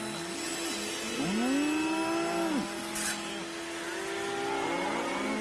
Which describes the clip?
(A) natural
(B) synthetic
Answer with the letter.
A